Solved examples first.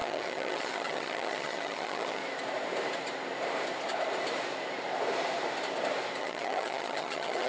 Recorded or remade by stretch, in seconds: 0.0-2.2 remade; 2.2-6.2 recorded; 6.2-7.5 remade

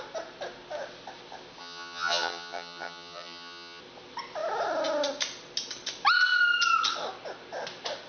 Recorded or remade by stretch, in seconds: 0.0-1.6 recorded; 1.6-3.8 remade; 3.8-8.1 recorded

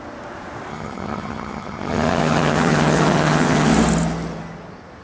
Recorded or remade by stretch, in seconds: 0.0-0.7 recorded; 0.7-3.7 remade; 3.7-5.0 recorded

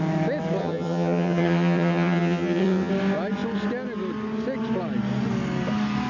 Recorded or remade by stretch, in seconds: 0.0-0.6 recorded; 0.6-2.9 remade; 2.9-6.1 recorded

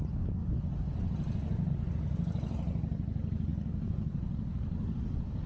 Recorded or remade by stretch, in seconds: 0.0-5.5 recorded

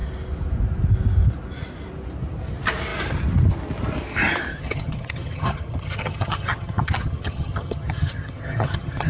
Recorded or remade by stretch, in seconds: 0.0-4.5 recorded; 4.5-9.1 remade

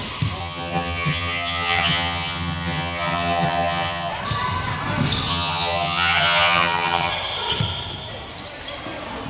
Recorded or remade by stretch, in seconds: 0.0-0.4 recorded; 0.4-4.1 remade; 4.1-5.3 recorded; 5.3-7.1 remade; 7.1-9.3 recorded